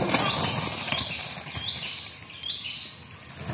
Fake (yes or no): no